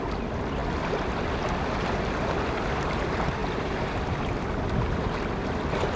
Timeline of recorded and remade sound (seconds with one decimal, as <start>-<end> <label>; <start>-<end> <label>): 0.0-6.0 recorded

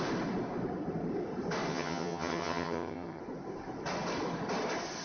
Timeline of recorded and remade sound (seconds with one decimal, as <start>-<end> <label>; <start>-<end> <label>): 0.0-1.7 recorded; 1.7-3.2 remade; 3.2-5.0 recorded

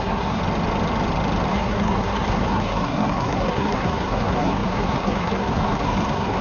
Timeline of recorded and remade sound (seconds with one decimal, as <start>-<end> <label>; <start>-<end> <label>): 0.0-0.4 remade; 0.4-1.5 recorded; 1.5-6.4 remade

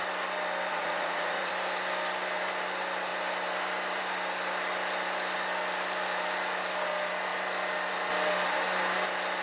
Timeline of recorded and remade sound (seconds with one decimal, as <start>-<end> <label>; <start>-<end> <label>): 0.0-0.7 recorded; 0.7-1.5 remade; 1.5-9.4 recorded

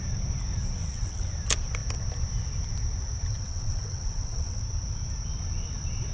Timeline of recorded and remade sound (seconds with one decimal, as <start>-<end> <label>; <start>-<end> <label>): 0.0-0.8 recorded; 0.8-1.3 remade; 1.3-3.3 recorded; 3.3-4.6 remade; 4.6-6.1 recorded